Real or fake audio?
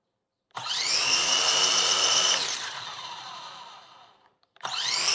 fake